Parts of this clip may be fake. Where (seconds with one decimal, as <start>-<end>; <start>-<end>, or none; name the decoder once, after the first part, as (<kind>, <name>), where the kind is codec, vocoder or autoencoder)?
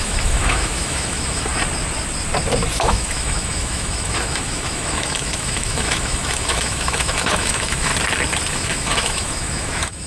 0.0-1.5 (autoencoder, DAC-VAE); 2.7-7.9; 8.5-10.1